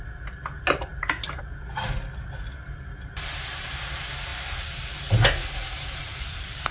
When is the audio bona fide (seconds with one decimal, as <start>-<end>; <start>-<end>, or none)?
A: 0.0-6.7